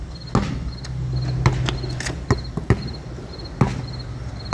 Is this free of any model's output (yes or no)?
yes